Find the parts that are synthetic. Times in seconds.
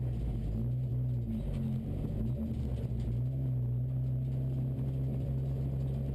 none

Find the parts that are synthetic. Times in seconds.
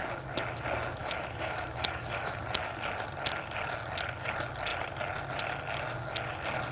1.0-2.4 (autoencoder, DAC-VAE)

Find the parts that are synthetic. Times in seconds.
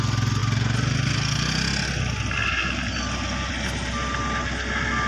none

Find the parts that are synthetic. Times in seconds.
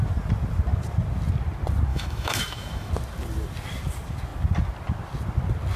1.9-2.9 (autoencoder, DAC-VAE)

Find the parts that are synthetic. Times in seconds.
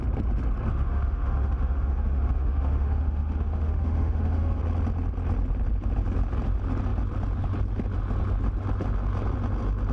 0.7-4.6 (autoencoder, DAC-VAE)